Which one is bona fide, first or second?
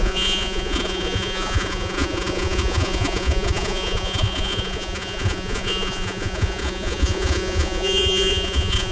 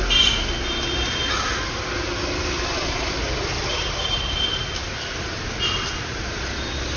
second